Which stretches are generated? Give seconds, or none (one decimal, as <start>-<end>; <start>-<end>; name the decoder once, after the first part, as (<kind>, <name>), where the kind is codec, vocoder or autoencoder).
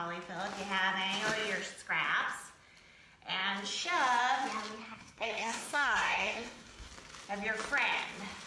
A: 4.8-6.9 (codec, SNAC)